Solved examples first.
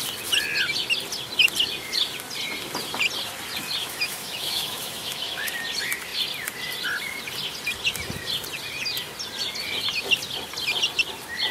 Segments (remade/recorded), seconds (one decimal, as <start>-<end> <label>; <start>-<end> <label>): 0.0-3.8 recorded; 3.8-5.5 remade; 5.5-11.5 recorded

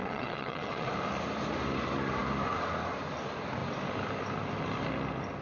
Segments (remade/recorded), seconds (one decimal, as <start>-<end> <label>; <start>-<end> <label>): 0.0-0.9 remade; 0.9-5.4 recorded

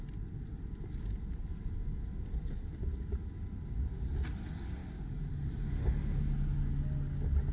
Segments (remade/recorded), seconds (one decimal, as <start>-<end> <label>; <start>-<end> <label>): 0.0-7.5 recorded

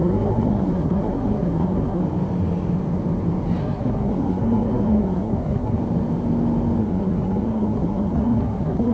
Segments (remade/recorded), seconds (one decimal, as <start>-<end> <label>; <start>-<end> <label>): 0.0-2.0 remade; 2.0-3.6 recorded; 3.6-5.8 remade; 5.8-6.8 recorded; 6.8-8.9 remade

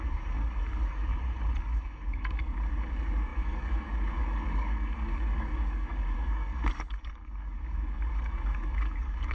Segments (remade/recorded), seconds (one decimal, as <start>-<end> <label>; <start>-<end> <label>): 0.0-1.1 remade; 1.1-1.6 recorded; 1.6-9.3 remade

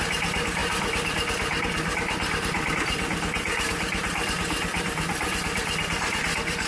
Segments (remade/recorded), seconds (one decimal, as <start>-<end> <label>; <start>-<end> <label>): 0.0-6.7 remade